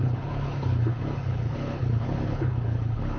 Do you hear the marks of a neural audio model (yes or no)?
yes